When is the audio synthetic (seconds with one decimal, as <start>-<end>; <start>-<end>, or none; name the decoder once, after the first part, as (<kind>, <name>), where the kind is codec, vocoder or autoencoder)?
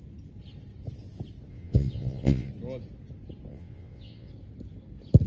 1.5-2.5 (vocoder, WaveNeXt); 3.5-4.3